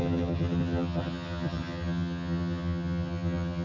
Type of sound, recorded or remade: remade